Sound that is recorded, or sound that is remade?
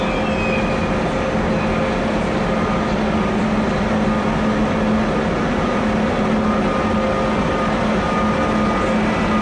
recorded